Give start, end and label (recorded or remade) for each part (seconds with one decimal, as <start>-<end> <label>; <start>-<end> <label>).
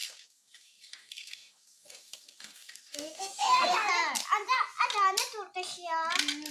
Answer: 0.0-3.9 remade; 3.9-6.5 recorded